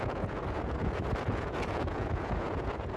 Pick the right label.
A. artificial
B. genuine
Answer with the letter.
A